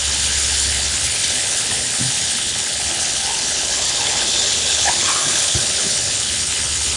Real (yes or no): no